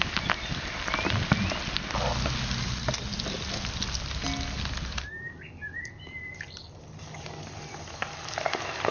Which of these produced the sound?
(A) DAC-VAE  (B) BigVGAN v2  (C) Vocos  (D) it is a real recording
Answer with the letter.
D